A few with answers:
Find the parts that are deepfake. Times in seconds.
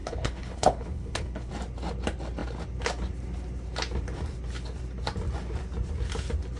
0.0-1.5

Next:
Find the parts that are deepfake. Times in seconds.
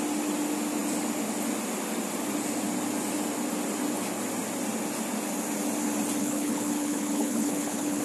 6.2-8.0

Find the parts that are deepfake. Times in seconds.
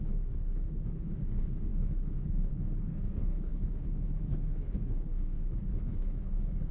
0.0-6.7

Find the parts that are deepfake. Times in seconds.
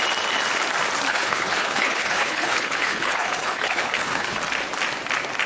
1.1-4.4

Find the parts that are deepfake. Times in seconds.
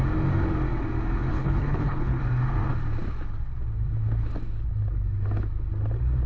1.3-2.2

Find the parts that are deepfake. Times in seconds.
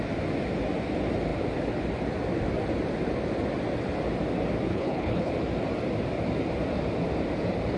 4.7-5.3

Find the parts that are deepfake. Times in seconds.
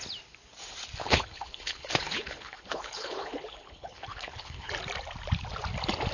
1.0-4.7